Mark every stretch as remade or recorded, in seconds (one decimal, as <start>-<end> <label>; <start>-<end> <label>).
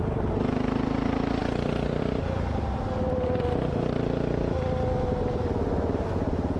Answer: 0.0-6.6 recorded